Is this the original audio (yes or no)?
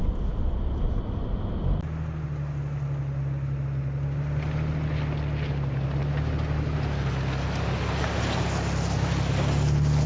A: yes